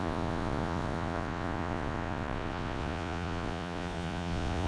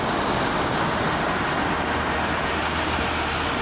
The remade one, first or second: first